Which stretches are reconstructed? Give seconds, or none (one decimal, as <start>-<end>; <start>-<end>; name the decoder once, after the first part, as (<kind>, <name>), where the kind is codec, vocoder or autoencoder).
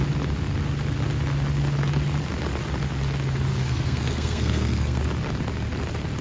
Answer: 3.5-5.0 (codec, SNAC)